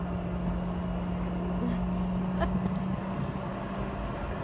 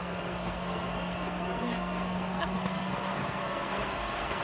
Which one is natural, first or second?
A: first